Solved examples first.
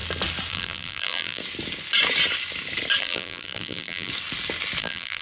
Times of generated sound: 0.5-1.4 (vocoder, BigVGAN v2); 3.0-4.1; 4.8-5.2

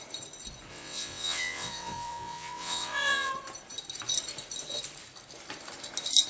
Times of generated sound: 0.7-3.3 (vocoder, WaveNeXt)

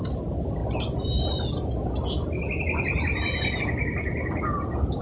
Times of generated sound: none

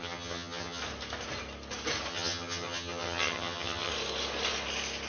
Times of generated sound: 0.0-0.8 (vocoder, HiFi-GAN); 2.1-3.9

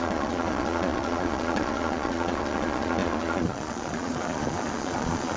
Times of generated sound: 0.0-5.4 (vocoder, Vocos)